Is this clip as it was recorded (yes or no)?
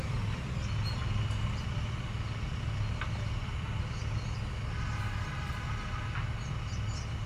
yes